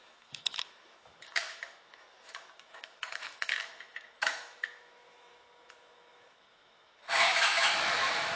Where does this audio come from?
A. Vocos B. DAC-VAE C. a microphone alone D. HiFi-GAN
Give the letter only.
B